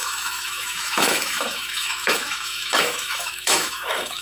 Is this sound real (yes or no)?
no